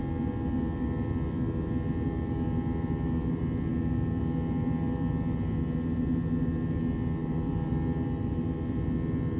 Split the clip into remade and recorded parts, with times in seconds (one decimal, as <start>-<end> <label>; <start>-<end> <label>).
0.0-7.2 recorded; 7.2-7.7 remade; 7.7-9.4 recorded